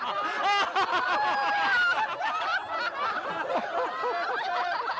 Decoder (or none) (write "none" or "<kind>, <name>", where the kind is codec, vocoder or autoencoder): none